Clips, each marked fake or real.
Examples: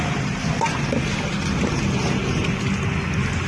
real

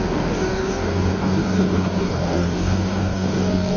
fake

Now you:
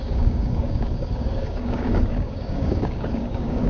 fake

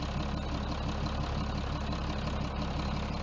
real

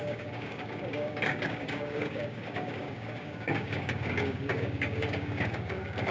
fake